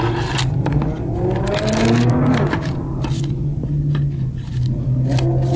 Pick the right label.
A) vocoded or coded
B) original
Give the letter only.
B